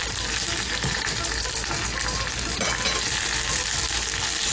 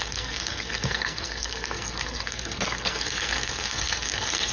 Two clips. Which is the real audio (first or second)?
first